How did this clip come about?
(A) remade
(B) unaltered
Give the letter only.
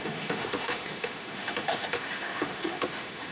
A